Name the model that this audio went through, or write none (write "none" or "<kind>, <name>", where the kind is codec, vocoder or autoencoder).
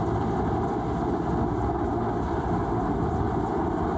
none